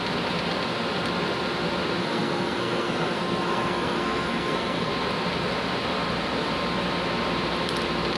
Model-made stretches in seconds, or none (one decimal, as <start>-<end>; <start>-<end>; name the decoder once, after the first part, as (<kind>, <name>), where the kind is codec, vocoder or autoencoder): 2.0-4.9 (codec, SNAC)